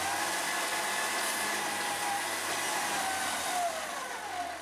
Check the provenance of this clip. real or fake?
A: real